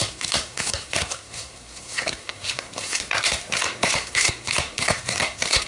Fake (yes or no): yes